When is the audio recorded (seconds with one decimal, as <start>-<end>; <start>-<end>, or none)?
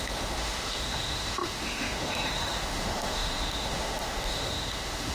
none